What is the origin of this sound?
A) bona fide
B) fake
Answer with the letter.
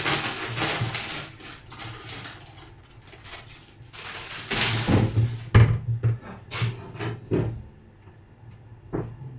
A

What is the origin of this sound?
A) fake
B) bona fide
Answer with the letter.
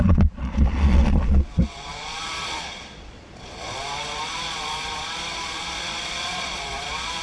A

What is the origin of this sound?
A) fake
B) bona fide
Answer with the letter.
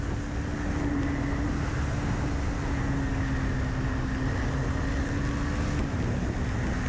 B